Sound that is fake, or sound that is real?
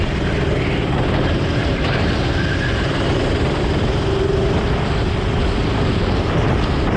real